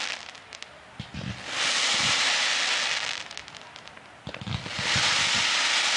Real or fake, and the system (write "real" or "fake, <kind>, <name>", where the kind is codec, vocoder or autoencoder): real